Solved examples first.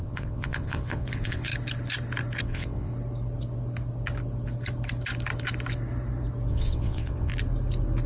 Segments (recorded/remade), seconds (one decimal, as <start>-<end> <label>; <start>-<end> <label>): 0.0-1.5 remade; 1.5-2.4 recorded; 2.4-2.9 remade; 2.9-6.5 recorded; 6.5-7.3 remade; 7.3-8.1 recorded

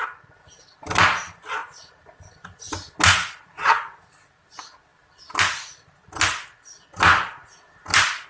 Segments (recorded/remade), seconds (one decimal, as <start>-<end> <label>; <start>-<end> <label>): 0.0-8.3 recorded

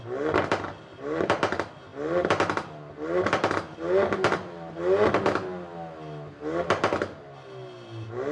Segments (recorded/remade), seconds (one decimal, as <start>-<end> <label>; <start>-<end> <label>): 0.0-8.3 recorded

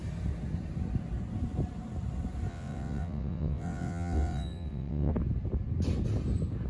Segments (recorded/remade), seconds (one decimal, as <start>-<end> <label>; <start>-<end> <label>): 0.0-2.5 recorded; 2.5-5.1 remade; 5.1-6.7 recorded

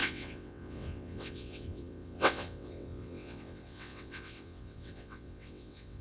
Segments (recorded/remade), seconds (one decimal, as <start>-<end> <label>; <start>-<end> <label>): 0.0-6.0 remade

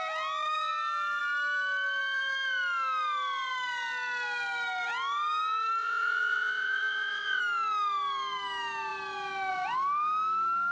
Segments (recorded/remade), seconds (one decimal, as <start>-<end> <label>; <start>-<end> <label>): 0.0-5.8 recorded; 5.8-7.4 remade; 7.4-10.7 recorded